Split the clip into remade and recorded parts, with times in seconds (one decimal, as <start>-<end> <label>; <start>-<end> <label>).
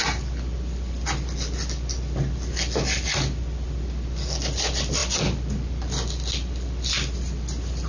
0.0-7.9 recorded